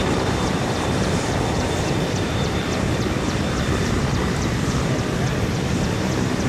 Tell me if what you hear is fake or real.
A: fake